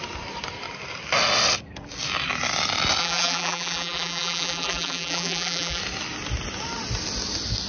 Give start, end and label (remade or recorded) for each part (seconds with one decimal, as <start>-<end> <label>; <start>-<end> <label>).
0.0-3.0 recorded; 3.0-5.8 remade; 5.8-7.7 recorded